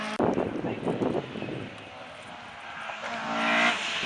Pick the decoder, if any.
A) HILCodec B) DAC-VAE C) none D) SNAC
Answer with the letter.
C